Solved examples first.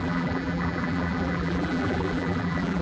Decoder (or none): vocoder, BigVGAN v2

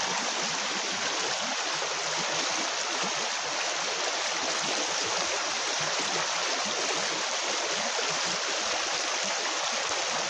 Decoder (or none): none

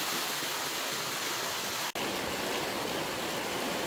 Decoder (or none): none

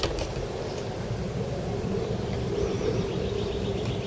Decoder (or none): vocoder, BigVGAN v2